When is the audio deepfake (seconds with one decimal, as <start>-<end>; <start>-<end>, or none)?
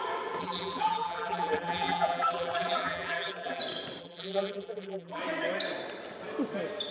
0.4-3.6; 4.0-5.2